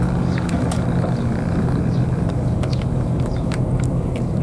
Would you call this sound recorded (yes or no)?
no